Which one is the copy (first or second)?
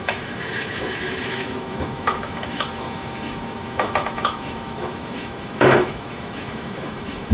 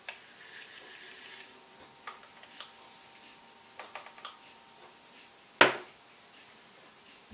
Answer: first